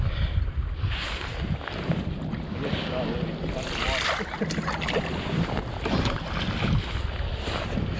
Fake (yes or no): no